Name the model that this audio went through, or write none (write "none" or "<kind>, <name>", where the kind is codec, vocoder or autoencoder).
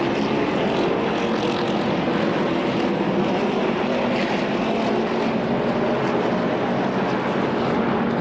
none